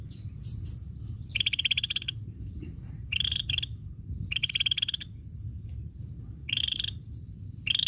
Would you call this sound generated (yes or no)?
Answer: yes